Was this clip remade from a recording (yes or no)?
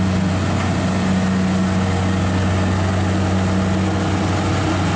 no